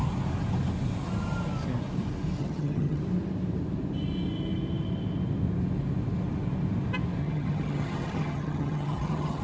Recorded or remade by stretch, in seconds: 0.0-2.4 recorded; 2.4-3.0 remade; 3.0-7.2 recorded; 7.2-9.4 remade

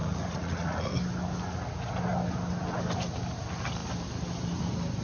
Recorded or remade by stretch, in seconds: 0.0-0.9 remade; 0.9-5.0 recorded